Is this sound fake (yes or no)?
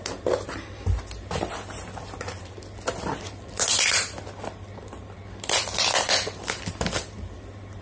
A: yes